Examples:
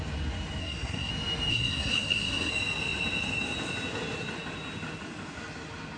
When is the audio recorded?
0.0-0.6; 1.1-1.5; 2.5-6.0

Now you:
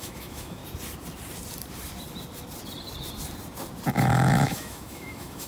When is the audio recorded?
0.6-3.9

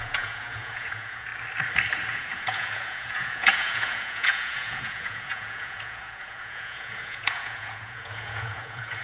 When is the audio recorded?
1.3-2.1

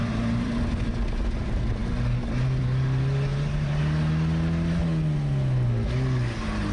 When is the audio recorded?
0.6-3.3; 3.8-6.7

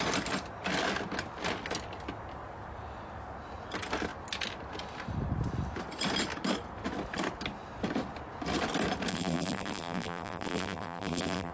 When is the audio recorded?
0.0-9.1

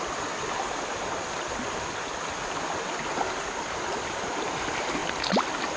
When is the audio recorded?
0.0-5.8